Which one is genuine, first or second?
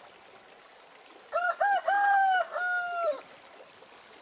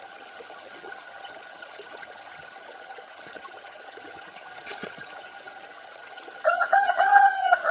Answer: first